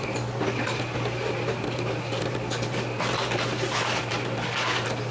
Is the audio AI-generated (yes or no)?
no